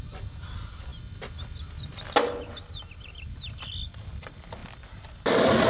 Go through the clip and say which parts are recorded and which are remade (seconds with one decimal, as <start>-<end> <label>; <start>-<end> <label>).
0.0-5.7 recorded